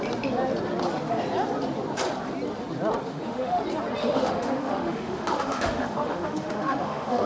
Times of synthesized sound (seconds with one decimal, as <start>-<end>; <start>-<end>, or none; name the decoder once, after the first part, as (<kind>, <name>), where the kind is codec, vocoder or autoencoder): 3.1-3.6 (autoencoder, DAC-VAE); 4.0-7.3